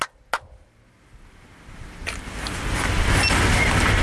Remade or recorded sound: recorded